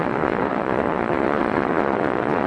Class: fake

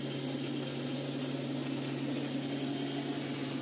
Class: real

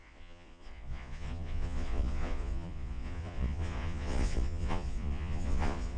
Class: fake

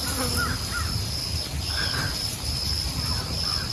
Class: real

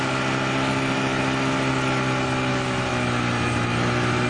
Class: real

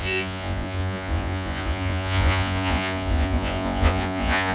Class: fake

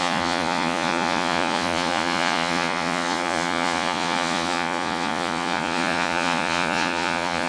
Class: fake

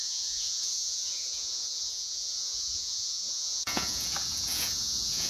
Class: fake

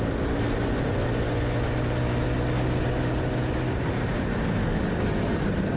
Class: real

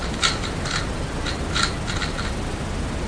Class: real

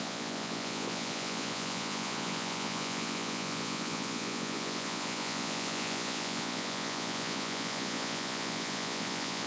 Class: fake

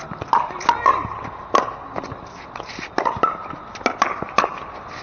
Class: real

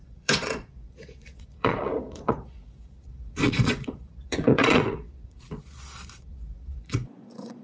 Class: fake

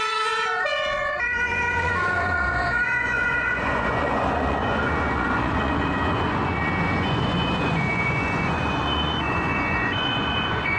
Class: fake